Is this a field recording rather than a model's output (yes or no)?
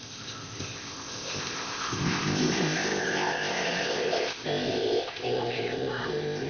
no